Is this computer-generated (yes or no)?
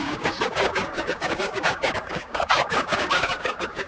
yes